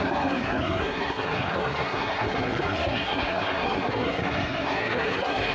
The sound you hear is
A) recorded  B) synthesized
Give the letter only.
B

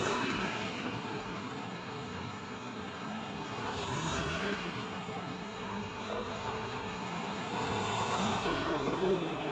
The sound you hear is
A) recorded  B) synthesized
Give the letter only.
B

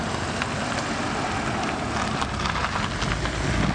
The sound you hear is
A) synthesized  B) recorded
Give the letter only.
B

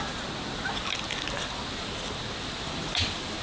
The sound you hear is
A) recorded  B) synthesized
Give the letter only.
A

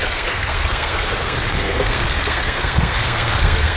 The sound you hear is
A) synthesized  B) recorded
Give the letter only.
A